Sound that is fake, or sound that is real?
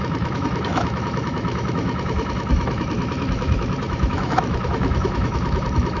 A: fake